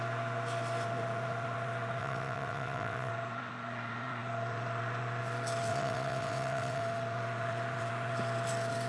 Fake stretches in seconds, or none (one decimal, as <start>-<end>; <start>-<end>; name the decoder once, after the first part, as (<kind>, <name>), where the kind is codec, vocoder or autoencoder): 2.0-3.1 (vocoder, WaveNeXt); 5.7-6.8